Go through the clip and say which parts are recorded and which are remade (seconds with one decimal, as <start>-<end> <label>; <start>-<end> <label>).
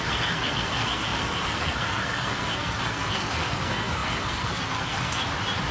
0.0-5.2 remade; 5.2-5.7 recorded